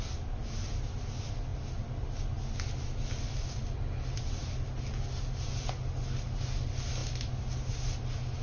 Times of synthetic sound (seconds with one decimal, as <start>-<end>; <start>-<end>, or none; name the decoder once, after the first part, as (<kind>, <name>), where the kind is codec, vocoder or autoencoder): none